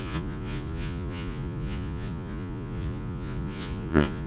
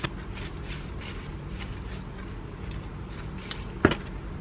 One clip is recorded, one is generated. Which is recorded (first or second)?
second